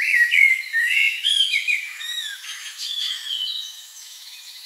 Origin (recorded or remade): remade